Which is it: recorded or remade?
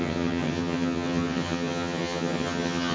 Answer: remade